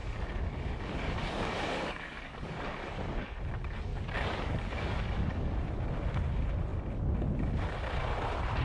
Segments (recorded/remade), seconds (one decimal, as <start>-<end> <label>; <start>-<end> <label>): 0.0-3.4 remade; 3.4-3.9 recorded; 3.9-5.5 remade; 5.5-8.6 recorded